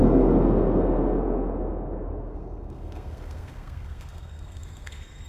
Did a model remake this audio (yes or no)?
yes